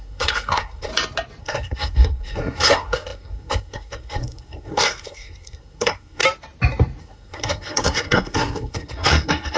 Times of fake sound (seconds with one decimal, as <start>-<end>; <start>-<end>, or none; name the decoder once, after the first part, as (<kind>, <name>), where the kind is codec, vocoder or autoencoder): 0.0-0.9 (codec, SNAC); 1.4-6.2; 7.0-9.6